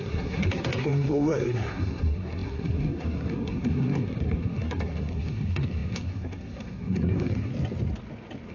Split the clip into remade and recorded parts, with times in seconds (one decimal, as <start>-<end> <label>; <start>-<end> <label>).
0.0-7.5 remade; 7.5-8.5 recorded